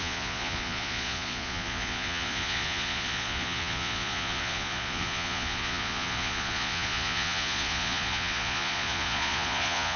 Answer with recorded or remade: remade